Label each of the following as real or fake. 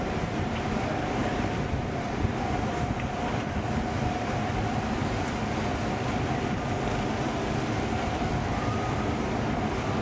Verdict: fake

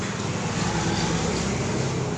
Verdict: real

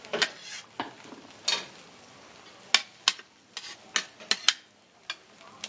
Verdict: real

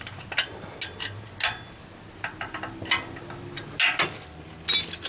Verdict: real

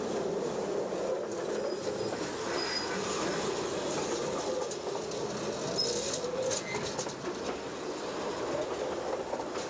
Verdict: real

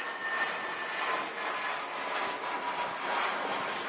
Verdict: real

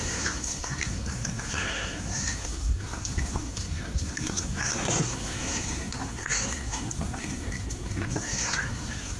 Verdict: fake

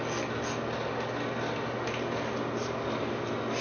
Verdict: real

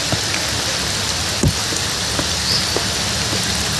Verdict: real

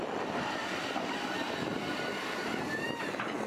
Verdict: fake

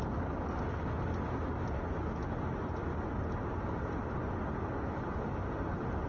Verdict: real